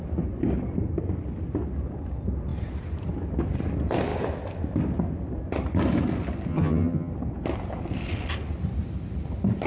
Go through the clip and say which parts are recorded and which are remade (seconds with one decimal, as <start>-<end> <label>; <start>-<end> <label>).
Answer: 0.0-6.5 recorded; 6.5-7.1 remade; 7.1-9.7 recorded